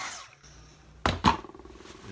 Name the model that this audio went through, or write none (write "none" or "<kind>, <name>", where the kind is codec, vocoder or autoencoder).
none